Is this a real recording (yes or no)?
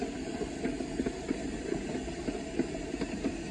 no